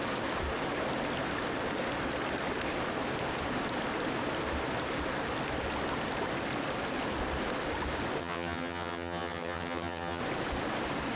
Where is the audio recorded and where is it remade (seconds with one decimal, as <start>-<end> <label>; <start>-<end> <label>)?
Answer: 0.0-8.2 recorded; 8.2-10.2 remade; 10.2-11.2 recorded